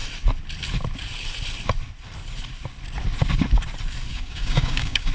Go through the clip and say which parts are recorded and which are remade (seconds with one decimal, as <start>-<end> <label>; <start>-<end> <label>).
0.0-4.1 recorded; 4.1-5.1 remade

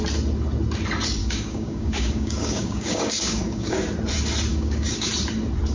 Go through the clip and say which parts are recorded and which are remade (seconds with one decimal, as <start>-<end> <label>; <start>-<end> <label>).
0.0-1.2 recorded; 1.2-3.8 remade; 3.8-4.5 recorded; 4.5-5.1 remade; 5.1-5.7 recorded

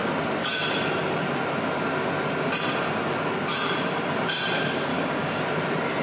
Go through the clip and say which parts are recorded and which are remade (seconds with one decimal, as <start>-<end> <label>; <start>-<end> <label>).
0.0-4.9 recorded; 4.9-5.4 remade; 5.4-6.0 recorded

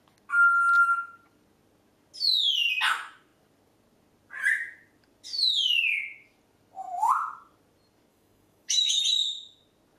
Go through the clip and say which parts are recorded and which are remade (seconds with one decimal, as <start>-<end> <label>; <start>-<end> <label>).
0.0-8.1 recorded; 8.1-9.0 remade; 9.0-10.0 recorded

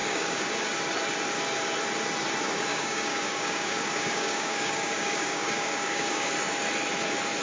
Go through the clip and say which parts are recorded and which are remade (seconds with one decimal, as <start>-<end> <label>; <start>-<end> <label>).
0.0-0.5 remade; 0.5-2.7 recorded; 2.7-6.3 remade; 6.3-7.4 recorded

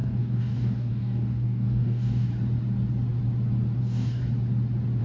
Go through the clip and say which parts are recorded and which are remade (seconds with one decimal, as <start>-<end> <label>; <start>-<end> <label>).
0.0-2.3 remade; 2.3-3.8 recorded; 3.8-4.2 remade; 4.2-5.0 recorded